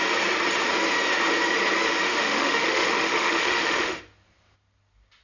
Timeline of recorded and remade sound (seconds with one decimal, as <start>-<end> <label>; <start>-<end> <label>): 0.0-2.1 recorded; 2.1-4.0 remade; 4.0-5.2 recorded